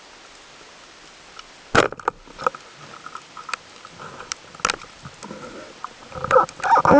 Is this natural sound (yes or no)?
yes